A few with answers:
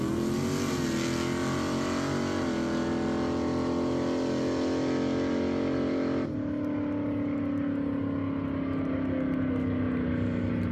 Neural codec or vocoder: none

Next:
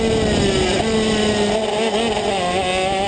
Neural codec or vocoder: none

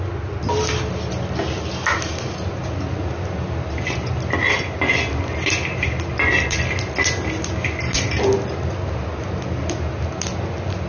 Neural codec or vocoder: none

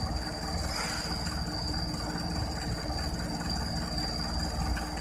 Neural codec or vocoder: none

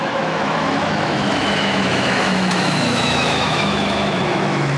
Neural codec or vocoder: autoencoder, DAC-VAE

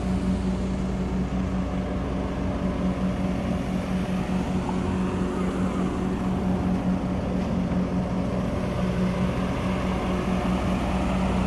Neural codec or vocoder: none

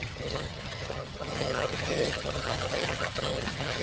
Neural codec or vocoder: vocoder, HiFi-GAN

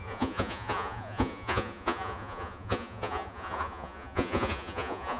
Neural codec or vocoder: vocoder, Vocos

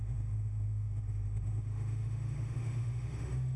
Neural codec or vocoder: autoencoder, DAC-VAE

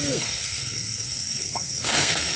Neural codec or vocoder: codec, SNAC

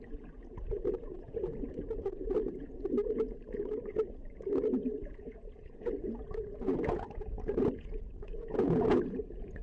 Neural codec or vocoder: vocoder, Vocos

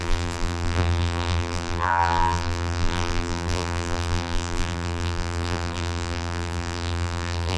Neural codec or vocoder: vocoder, BigVGAN v2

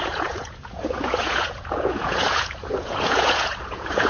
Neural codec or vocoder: vocoder, Vocos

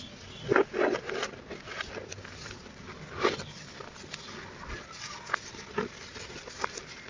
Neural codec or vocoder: none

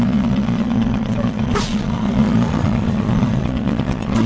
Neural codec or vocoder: vocoder, Vocos